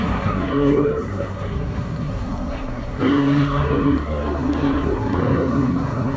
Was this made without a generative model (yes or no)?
no